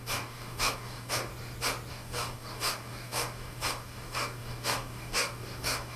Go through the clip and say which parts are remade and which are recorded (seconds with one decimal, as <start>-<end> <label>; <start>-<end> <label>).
0.0-1.3 remade; 1.3-1.9 recorded; 1.9-6.0 remade